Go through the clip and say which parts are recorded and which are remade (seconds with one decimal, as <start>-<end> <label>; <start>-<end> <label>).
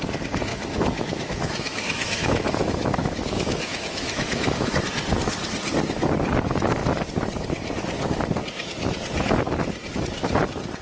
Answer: 0.0-0.5 recorded; 0.5-4.7 remade; 4.7-10.8 recorded